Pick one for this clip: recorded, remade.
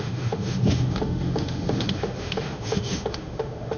remade